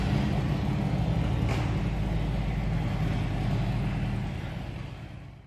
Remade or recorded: recorded